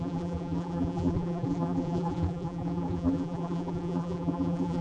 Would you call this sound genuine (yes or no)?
no